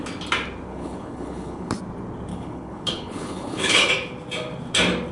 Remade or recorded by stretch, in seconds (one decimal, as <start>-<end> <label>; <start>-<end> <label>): 0.0-0.7 recorded; 0.7-1.7 remade; 1.7-2.3 recorded; 2.3-3.9 remade; 3.9-5.1 recorded

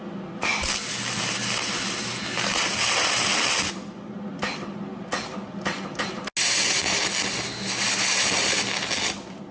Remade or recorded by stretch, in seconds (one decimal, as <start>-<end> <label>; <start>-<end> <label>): 0.0-9.5 recorded

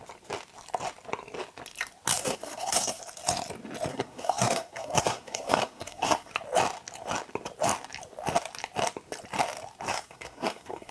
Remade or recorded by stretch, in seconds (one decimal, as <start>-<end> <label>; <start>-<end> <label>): 0.0-2.2 recorded; 2.2-3.0 remade; 3.0-3.9 recorded; 3.9-6.3 remade; 6.3-9.9 recorded; 9.9-10.9 remade

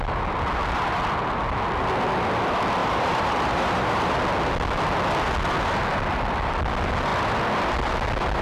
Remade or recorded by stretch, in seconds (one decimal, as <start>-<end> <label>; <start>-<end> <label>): 0.0-2.8 recorded; 2.8-4.2 remade; 4.2-8.4 recorded

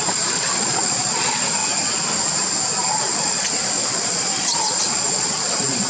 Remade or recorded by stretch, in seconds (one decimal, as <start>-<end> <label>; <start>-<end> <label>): 0.0-1.6 remade; 1.6-2.9 recorded; 2.9-5.9 remade

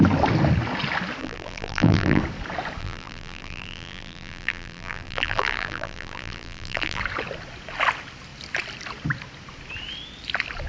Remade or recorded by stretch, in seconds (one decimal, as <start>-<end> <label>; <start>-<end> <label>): 0.0-1.2 recorded; 1.2-2.2 remade; 2.2-2.8 recorded; 2.8-7.0 remade; 7.0-10.7 recorded

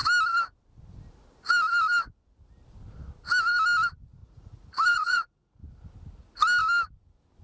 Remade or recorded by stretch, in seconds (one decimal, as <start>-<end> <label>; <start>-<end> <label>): 0.0-4.2 recorded; 4.2-5.6 remade; 5.6-7.4 recorded

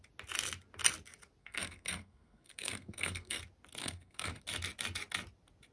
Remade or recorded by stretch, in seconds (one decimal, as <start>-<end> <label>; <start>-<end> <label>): 0.0-1.4 recorded; 1.4-3.4 remade; 3.4-3.8 recorded; 3.8-4.4 remade; 4.4-5.7 recorded